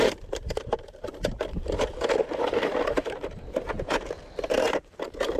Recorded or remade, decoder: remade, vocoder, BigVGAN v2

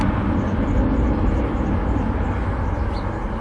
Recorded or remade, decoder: recorded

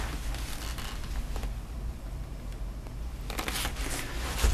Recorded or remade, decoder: recorded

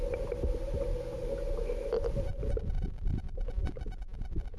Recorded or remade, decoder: recorded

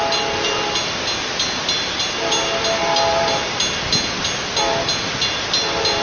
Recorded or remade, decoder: recorded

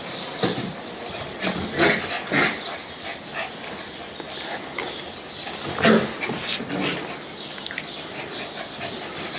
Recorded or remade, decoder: recorded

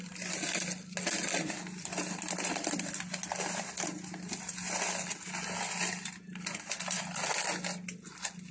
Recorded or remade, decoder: recorded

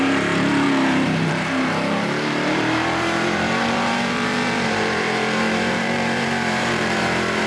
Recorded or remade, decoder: remade, vocoder, BigVGAN v2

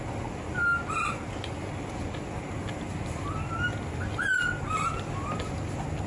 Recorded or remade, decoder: recorded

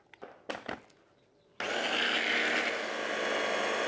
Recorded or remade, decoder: recorded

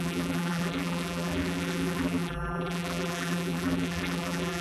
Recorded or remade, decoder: remade, vocoder, BigVGAN v2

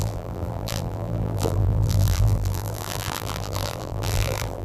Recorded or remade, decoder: remade, vocoder, BigVGAN v2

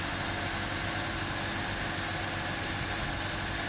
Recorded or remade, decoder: recorded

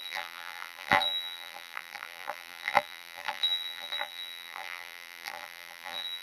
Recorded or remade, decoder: remade, vocoder, BigVGAN v2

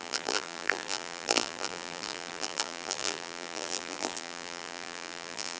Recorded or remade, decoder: remade, vocoder, BigVGAN v2